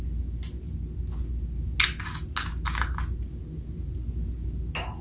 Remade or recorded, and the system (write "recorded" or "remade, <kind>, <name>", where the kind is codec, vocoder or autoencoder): recorded